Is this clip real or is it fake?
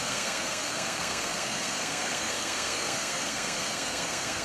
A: fake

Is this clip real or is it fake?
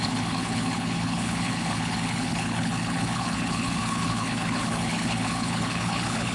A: fake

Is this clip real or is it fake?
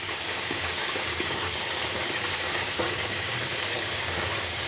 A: fake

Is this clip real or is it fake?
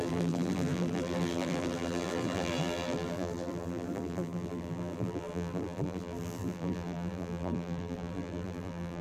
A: fake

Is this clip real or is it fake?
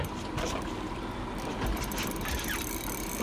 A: fake